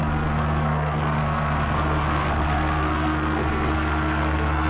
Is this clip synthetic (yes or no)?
yes